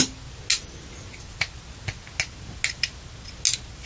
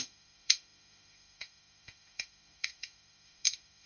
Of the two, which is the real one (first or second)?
first